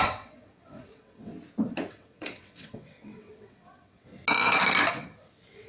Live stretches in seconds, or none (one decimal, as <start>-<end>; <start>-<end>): 1.3-1.9; 4.1-4.9